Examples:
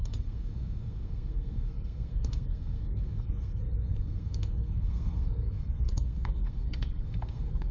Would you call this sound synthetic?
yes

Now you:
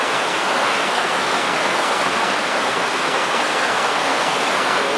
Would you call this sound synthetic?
yes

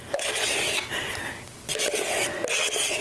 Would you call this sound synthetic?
no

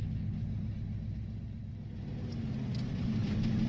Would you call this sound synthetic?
no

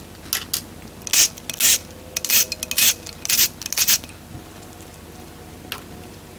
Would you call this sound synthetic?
no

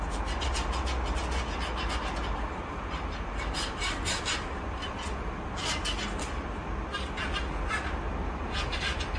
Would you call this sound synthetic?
no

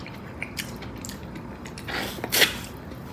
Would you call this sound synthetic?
no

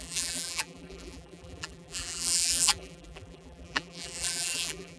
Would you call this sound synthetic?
yes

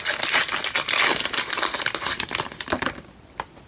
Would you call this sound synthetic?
no